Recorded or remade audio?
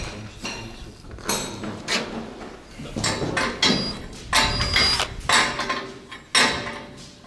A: recorded